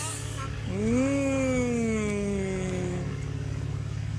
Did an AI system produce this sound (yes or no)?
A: yes